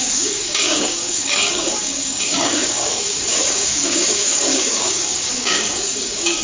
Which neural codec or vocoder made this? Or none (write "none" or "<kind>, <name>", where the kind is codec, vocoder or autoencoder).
codec, DAC